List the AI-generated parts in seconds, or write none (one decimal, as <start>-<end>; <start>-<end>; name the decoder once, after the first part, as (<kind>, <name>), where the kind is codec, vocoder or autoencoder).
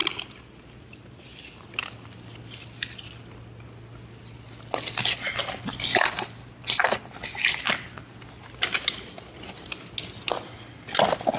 none